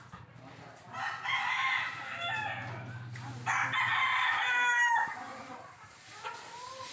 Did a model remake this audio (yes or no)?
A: no